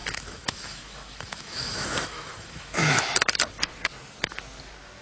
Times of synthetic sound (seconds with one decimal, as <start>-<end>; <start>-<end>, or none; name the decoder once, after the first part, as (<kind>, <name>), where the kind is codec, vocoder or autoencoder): 0.0-3.0 (autoencoder, DAC-VAE)